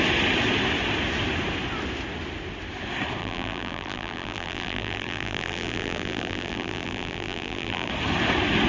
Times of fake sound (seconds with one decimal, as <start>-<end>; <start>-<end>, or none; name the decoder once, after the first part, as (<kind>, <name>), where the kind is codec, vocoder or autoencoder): 3.2-7.9 (vocoder, BigVGAN v2)